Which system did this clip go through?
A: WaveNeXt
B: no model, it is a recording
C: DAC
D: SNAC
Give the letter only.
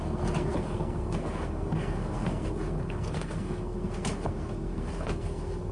D